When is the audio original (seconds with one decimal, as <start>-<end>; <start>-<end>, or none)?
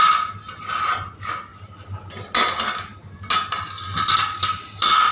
0.0-5.1